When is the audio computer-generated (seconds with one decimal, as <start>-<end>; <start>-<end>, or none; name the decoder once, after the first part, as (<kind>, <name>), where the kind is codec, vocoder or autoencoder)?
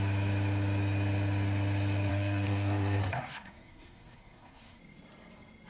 2.1-4.8 (codec, SNAC)